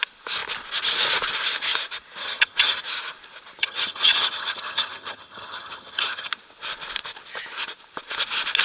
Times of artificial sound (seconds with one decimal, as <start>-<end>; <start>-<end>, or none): 2.2-2.8; 3.6-6.3